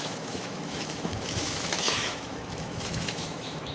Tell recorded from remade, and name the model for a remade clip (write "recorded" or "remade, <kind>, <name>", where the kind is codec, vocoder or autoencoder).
remade, autoencoder, DAC-VAE